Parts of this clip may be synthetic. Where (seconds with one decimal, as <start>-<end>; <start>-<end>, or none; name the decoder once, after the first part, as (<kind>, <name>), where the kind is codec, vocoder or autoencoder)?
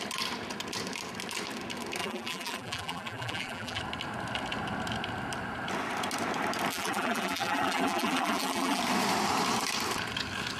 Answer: 2.0-3.8 (vocoder, BigVGAN v2); 6.7-8.8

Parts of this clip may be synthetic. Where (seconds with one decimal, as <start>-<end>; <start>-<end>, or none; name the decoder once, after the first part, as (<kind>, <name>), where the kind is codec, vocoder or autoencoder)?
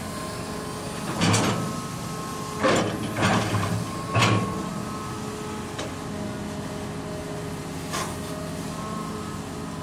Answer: none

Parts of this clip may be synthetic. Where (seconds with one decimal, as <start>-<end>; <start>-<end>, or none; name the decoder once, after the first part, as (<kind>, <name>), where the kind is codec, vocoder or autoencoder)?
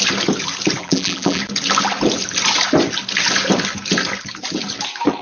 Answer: 0.8-1.4 (vocoder, BigVGAN v2)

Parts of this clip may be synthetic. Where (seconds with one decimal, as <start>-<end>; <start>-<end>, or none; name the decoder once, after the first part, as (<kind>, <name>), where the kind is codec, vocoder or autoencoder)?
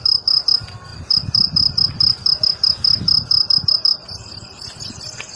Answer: 0.9-2.0 (vocoder, BigVGAN v2); 4.2-5.0